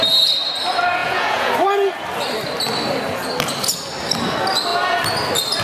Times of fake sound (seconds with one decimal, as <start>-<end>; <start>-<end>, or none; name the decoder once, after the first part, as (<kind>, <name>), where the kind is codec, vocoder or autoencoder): 1.0-1.5 (vocoder, Vocos)